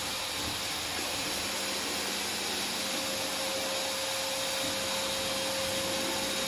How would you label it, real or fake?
real